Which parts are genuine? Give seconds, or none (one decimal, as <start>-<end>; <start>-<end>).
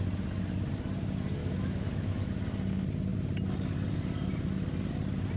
0.0-1.4; 2.3-5.4